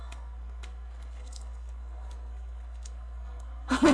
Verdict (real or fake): fake